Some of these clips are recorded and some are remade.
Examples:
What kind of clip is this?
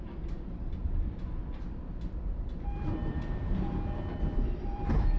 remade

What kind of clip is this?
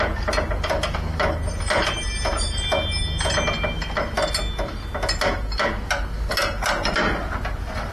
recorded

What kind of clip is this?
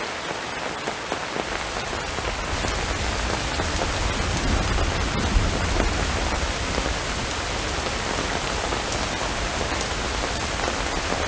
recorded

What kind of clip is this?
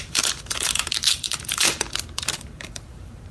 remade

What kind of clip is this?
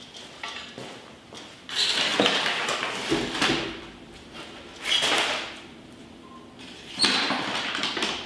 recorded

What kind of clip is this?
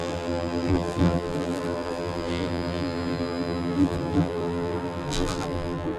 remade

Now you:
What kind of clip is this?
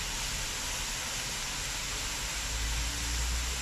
recorded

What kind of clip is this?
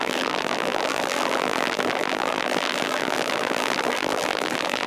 remade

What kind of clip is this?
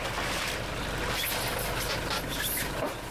recorded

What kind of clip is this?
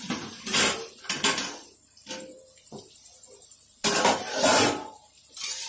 remade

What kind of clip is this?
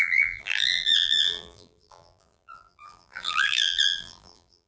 remade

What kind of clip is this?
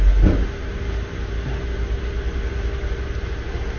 recorded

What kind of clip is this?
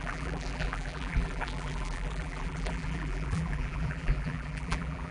remade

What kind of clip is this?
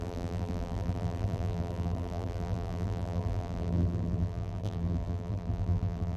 remade